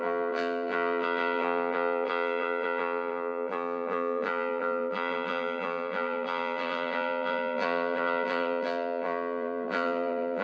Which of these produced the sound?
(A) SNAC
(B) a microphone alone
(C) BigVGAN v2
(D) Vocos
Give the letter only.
C